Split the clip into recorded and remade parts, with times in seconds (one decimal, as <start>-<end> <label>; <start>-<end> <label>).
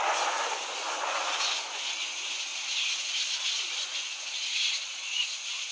0.0-2.5 remade; 2.5-3.6 recorded; 3.6-5.7 remade